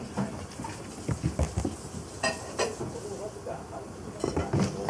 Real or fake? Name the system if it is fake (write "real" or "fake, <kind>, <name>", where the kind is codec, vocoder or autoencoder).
real